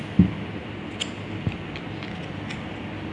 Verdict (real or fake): real